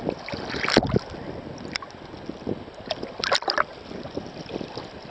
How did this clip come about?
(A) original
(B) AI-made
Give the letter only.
A